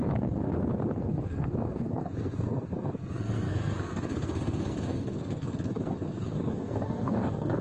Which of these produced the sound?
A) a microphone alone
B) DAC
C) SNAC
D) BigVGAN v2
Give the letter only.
C